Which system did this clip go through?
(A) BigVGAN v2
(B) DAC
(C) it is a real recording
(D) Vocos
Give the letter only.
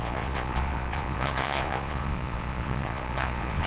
D